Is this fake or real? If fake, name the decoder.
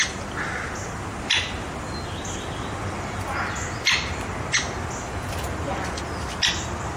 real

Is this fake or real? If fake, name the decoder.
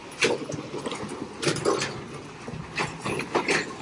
real